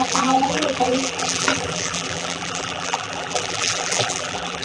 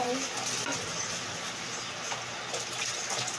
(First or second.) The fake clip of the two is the first